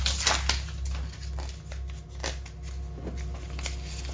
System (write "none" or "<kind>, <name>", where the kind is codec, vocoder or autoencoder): none